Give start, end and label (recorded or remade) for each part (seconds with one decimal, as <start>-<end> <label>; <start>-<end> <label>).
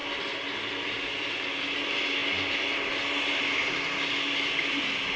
0.0-5.2 recorded